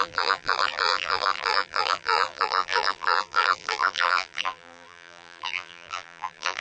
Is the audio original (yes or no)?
no